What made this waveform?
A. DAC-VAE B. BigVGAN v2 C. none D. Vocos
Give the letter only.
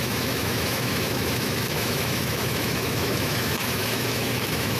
A